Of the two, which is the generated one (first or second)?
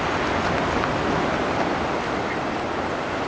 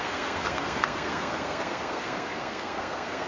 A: second